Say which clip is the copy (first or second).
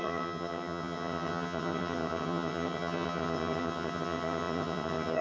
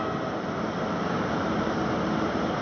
first